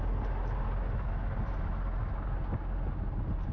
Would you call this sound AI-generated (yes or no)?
no